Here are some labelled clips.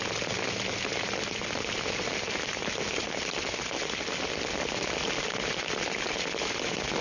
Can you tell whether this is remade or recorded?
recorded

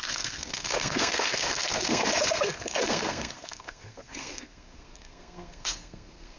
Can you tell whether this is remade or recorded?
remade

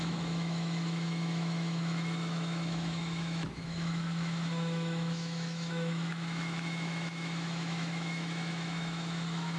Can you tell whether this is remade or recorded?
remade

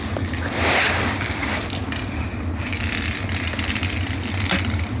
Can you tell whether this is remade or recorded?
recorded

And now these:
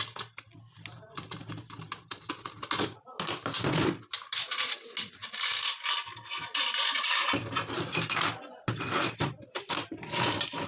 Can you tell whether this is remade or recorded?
recorded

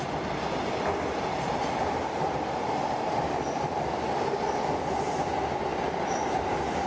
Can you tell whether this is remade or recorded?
recorded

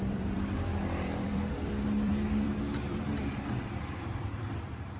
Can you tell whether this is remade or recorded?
remade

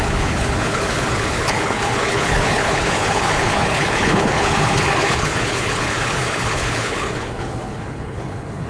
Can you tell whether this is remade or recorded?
remade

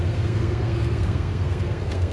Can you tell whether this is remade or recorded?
remade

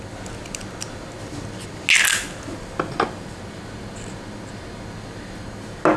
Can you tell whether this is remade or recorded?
recorded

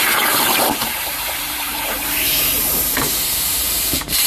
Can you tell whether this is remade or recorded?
remade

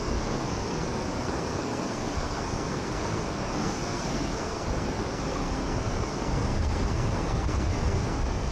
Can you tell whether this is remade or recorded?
remade